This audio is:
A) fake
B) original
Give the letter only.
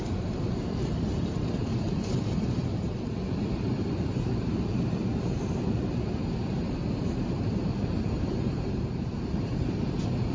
A